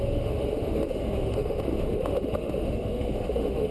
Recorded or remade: remade